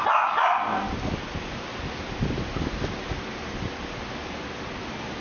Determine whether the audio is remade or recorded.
recorded